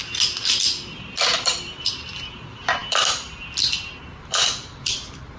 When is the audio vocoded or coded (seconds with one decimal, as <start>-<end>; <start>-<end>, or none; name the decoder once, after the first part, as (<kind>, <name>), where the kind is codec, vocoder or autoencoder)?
1.0-5.4 (vocoder, BigVGAN v2)